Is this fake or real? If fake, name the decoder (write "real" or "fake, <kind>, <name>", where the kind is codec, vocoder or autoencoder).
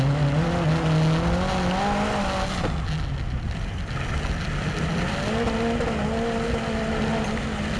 real